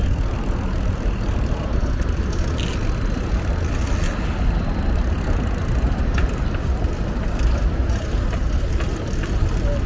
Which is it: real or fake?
real